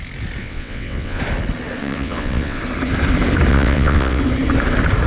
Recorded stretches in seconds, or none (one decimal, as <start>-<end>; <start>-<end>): 0.0-0.4; 1.2-1.8; 2.6-3.5; 4.2-5.1